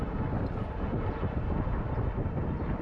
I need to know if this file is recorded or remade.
recorded